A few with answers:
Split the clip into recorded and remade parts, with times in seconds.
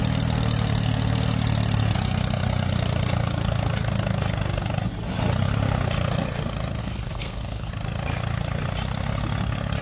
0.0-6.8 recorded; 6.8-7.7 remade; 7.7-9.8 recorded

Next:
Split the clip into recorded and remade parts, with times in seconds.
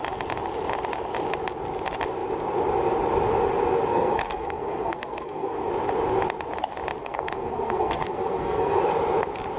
0.0-3.9 recorded; 3.9-5.7 remade; 5.7-7.0 recorded; 7.0-8.8 remade; 8.8-9.6 recorded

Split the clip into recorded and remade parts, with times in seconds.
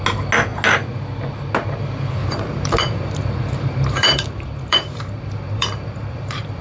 0.0-2.2 recorded; 2.2-6.6 remade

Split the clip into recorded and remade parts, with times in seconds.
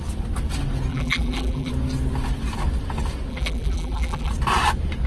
0.0-0.9 recorded; 0.9-1.7 remade; 1.7-3.3 recorded; 3.3-4.3 remade; 4.3-5.1 recorded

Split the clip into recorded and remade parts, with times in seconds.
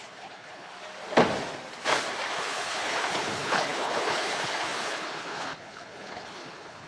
0.0-0.7 remade; 0.7-2.3 recorded; 2.3-6.9 remade